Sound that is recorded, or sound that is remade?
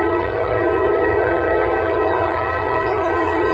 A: remade